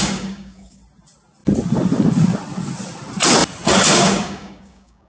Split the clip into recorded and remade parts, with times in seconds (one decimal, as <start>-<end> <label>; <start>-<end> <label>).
0.0-0.8 remade; 0.8-3.9 recorded; 3.9-5.1 remade